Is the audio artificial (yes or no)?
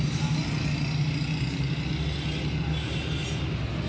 no